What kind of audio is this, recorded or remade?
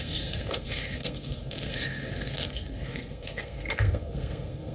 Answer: remade